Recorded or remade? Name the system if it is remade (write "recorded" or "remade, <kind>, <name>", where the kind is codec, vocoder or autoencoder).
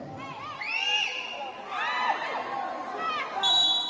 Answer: recorded